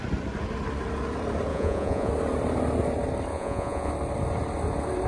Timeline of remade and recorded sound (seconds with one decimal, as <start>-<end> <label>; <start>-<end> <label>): 0.0-1.5 recorded; 1.5-2.1 remade; 2.1-3.3 recorded; 3.3-3.9 remade; 3.9-5.1 recorded